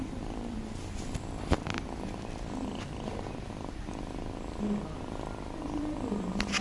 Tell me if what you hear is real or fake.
real